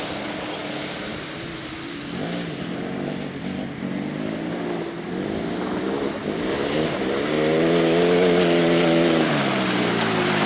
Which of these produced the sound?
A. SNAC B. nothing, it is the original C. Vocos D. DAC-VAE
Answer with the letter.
B